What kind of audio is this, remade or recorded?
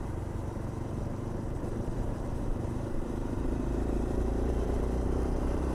remade